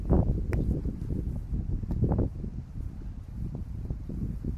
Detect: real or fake real